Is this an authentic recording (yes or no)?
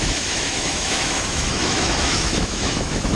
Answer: no